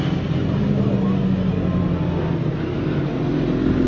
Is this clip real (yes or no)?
yes